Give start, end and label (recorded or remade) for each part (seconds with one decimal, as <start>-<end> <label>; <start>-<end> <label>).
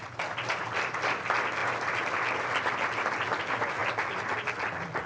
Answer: 0.0-5.1 recorded